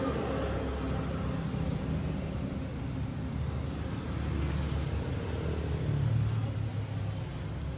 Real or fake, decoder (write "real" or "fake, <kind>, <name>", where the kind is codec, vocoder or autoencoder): real